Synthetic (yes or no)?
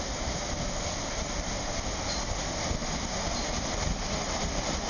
no